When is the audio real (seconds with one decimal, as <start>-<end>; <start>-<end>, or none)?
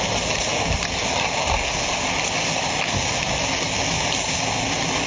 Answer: 0.0-5.1